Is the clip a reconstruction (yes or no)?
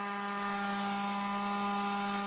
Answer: no